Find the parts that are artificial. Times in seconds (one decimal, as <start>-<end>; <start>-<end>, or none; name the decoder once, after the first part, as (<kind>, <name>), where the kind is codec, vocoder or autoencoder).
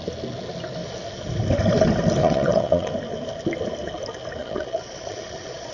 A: 2.2-2.9 (vocoder, Vocos); 4.4-5.7